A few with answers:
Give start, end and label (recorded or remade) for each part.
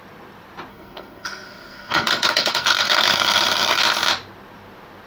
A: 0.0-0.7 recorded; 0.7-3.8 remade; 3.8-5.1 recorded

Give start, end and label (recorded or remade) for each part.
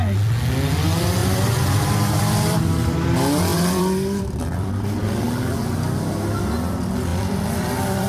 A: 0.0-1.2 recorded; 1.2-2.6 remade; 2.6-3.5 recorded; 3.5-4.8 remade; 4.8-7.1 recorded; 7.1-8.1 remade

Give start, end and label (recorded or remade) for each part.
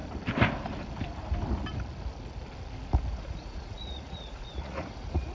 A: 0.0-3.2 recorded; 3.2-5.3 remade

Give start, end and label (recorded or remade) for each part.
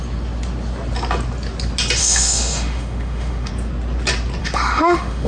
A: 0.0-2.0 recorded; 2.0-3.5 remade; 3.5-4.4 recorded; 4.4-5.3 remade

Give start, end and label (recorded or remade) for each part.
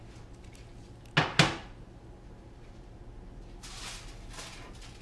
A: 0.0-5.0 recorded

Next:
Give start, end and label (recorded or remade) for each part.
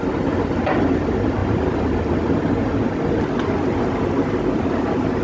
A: 0.0-5.2 recorded